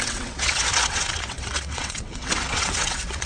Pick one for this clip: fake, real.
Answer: fake